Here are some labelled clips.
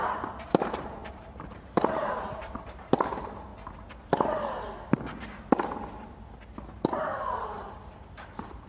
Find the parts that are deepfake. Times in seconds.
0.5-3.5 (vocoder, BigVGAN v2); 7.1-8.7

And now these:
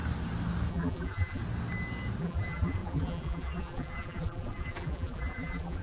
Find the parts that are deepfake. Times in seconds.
0.7-1.4 (vocoder, BigVGAN v2); 2.2-5.8

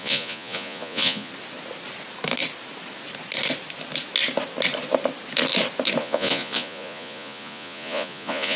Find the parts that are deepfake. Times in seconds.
0.0-1.3 (vocoder, Vocos); 6.0-8.6